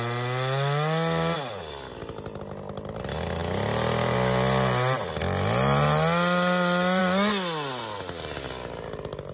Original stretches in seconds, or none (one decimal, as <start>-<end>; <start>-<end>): 0.0-9.3